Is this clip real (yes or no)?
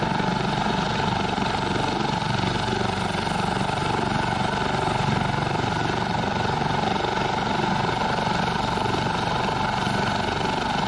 no